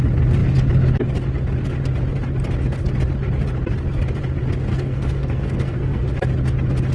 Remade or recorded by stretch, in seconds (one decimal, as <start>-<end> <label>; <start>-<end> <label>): 0.0-4.7 recorded; 4.7-6.0 remade; 6.0-6.9 recorded